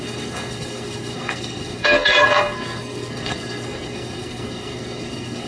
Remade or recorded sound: remade